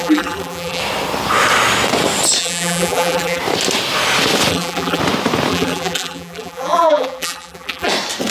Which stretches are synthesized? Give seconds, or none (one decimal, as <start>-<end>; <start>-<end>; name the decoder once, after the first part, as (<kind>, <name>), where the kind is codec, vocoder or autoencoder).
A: 0.0-0.8 (vocoder, BigVGAN v2); 2.4-3.4; 4.5-5.0; 5.5-7.9